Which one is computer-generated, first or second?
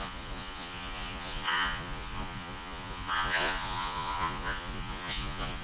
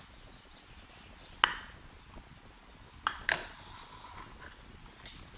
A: first